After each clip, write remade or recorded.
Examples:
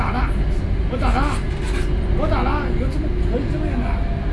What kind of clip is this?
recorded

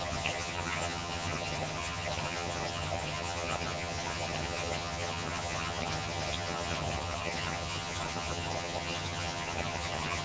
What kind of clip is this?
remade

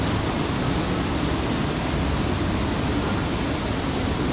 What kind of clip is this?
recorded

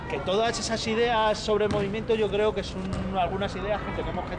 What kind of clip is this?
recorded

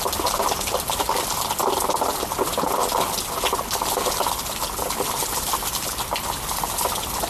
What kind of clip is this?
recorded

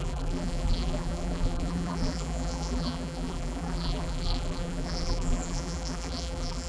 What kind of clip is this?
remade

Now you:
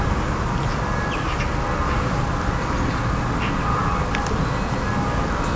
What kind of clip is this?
recorded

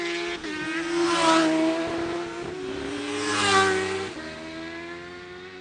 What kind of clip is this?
recorded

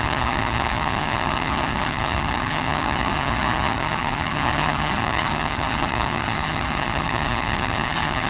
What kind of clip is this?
remade